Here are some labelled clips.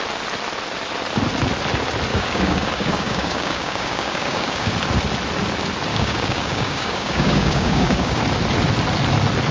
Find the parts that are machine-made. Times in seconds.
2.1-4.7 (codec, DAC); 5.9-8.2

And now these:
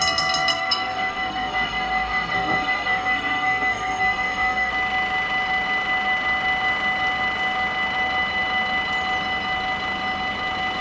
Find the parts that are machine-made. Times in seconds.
0.5-4.7 (codec, SNAC)

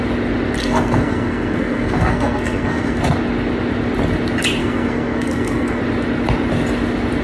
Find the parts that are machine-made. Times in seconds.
0.6-3.0 (codec, SNAC); 4.6-5.8

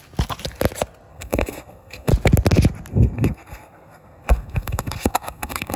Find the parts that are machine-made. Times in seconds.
1.1-2.1 (codec, SNAC); 2.9-5.8

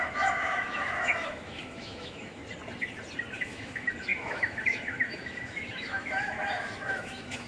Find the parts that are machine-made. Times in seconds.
0.0-2.4 (autoencoder, DAC-VAE); 3.4-7.5

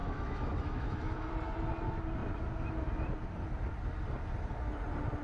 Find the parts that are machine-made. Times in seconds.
0.0-1.3 (autoencoder, DAC-VAE)

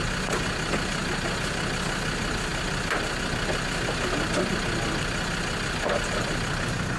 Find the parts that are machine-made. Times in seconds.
none

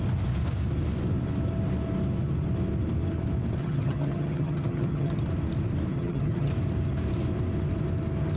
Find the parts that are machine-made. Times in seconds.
3.6-5.2 (vocoder, HiFi-GAN); 5.9-6.5